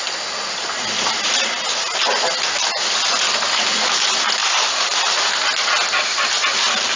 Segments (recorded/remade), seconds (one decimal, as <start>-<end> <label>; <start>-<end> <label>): 0.0-4.4 recorded; 4.4-5.1 remade; 5.1-7.0 recorded